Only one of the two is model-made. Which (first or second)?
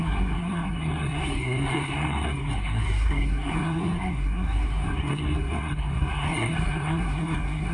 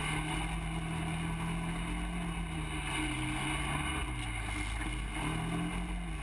first